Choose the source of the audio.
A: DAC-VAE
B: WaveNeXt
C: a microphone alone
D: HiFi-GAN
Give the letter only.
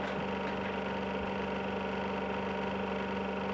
C